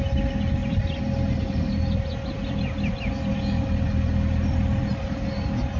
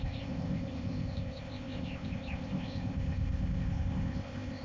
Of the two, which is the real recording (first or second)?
first